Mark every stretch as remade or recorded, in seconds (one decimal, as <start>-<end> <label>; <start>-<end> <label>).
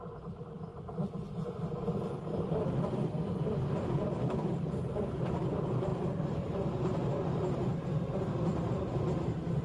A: 0.0-4.5 recorded; 4.5-5.0 remade; 5.0-5.9 recorded; 5.9-9.2 remade; 9.2-9.6 recorded